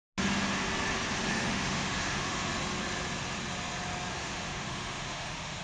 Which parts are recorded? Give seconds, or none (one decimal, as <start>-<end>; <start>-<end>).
0.0-1.3; 2.5-4.1